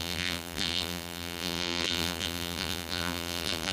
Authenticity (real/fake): fake